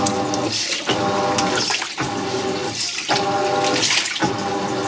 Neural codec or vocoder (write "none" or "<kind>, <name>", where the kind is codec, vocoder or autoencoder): none